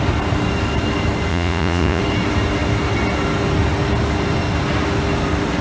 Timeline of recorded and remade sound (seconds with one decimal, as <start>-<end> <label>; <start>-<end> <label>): 0.0-1.3 recorded; 1.3-2.0 remade; 2.0-5.6 recorded